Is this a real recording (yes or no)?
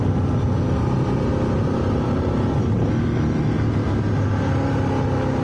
yes